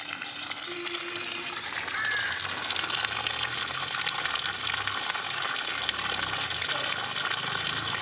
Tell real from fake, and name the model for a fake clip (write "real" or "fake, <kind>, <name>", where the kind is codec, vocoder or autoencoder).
real